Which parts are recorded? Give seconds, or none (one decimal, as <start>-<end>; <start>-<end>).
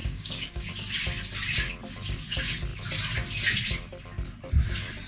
0.7-5.1